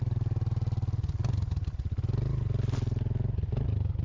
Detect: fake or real real